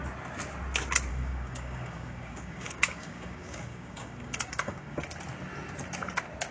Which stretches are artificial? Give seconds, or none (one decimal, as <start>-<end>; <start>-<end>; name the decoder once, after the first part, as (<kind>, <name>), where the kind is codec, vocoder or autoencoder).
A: 1.1-5.0 (codec, DAC)

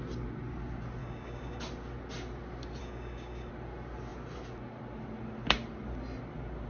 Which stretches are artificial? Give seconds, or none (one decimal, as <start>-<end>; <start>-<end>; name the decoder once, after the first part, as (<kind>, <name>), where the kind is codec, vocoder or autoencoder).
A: 1.0-1.6 (codec, DAC); 2.8-3.5

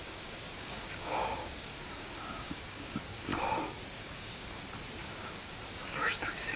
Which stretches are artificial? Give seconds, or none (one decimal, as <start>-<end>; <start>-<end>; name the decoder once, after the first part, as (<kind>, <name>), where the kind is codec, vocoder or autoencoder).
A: 0.0-3.3 (codec, DAC); 4.0-4.4; 5.0-6.6

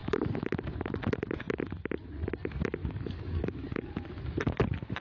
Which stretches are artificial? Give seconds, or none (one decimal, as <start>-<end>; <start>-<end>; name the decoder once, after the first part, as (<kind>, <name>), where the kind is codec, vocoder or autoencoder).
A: 2.8-3.9 (codec, DAC)

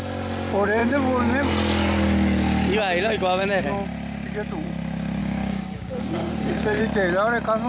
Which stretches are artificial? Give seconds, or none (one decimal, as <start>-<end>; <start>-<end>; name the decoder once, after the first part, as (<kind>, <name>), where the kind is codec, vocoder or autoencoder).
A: 5.2-6.8 (codec, DAC)